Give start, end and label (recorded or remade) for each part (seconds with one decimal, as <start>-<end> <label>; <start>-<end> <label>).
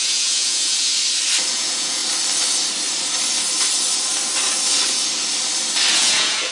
0.0-0.9 remade; 0.9-1.5 recorded; 1.5-2.0 remade; 2.0-5.9 recorded; 5.9-6.5 remade